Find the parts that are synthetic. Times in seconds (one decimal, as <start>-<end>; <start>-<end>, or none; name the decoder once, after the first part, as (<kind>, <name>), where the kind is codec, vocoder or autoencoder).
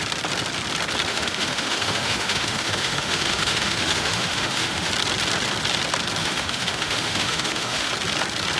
1.1-4.9 (autoencoder, DAC-VAE); 6.2-7.9